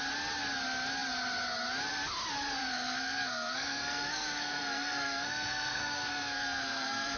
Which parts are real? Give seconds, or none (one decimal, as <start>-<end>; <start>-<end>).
0.0-2.6